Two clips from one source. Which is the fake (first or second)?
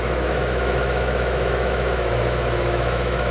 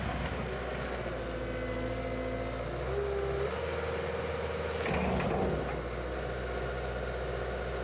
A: first